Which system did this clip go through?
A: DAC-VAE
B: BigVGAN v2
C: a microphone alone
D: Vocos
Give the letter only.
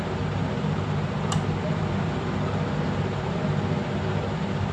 C